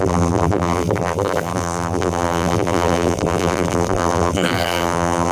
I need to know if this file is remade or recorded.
remade